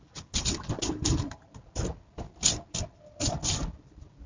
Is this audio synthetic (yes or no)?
no